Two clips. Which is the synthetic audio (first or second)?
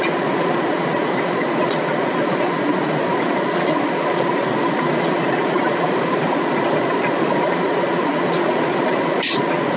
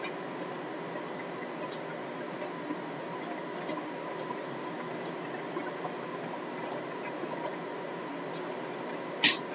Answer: first